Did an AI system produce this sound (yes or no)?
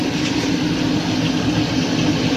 no